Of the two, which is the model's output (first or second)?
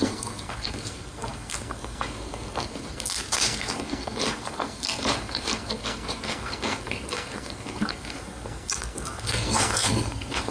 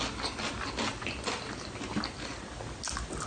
first